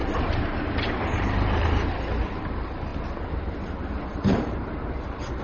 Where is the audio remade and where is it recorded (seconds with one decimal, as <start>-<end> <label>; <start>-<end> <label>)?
0.0-2.9 remade; 2.9-4.1 recorded; 4.1-5.4 remade